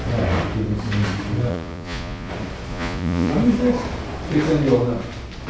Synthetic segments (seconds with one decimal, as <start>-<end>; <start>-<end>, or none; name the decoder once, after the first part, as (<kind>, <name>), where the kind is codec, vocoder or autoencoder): 1.5-2.3 (vocoder, Vocos); 2.7-3.3